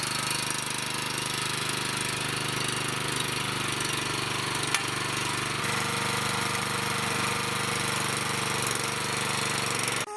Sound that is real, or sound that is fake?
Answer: real